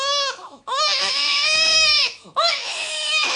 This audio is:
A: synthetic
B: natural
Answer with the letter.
A